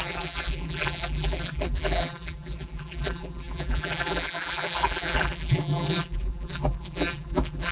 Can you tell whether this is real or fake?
fake